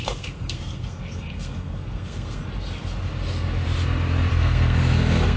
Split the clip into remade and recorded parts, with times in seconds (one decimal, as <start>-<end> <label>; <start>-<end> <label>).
0.0-2.4 remade; 2.4-4.3 recorded; 4.3-5.4 remade